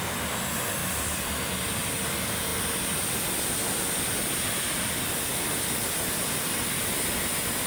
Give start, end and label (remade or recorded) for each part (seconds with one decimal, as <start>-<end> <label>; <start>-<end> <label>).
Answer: 0.0-0.8 recorded; 0.8-1.3 remade; 1.3-7.7 recorded